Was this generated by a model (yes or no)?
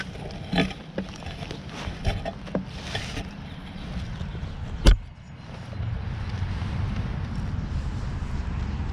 no